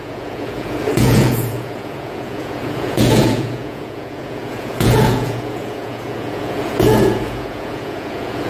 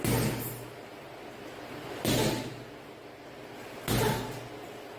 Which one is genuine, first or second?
second